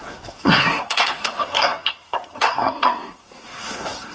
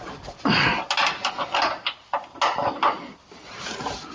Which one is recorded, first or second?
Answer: second